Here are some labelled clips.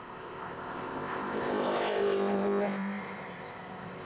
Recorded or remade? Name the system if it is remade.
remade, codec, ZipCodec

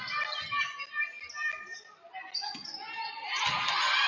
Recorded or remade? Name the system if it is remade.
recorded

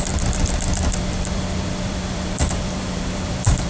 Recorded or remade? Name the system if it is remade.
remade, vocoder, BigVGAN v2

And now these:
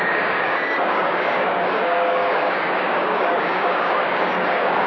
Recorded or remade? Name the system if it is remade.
remade, codec, DAC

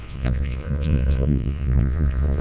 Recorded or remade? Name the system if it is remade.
remade, vocoder, Vocos